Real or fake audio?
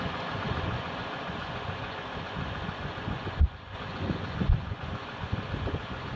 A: fake